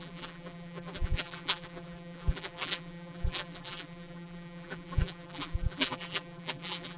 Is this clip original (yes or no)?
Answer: no